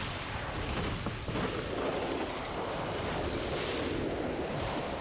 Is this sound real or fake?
real